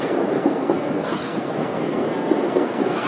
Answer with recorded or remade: remade